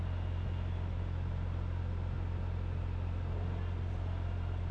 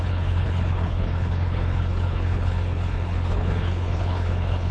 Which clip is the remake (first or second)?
second